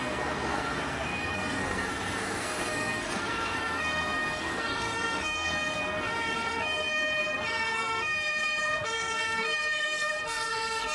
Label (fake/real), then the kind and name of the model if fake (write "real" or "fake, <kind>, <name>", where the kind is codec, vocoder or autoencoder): fake, codec, SNAC